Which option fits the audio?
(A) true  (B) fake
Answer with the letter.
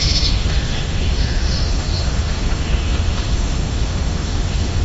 B